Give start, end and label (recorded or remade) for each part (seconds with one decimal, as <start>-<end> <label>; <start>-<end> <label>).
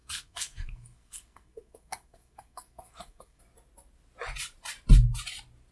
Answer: 0.0-3.4 remade; 3.4-5.7 recorded